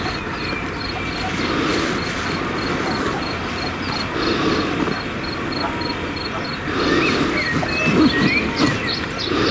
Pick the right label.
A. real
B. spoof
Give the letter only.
A